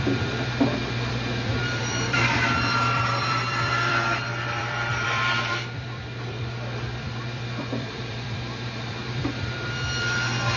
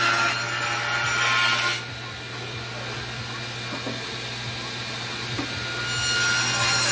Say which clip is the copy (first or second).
first